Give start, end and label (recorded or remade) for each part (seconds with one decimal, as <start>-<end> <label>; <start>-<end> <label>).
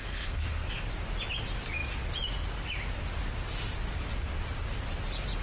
0.0-0.8 remade; 0.8-5.4 recorded